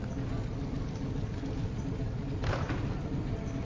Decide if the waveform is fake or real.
real